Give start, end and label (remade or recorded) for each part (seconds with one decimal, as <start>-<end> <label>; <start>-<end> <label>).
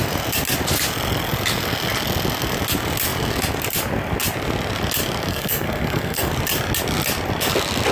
0.0-5.3 recorded; 5.3-6.3 remade; 6.3-7.9 recorded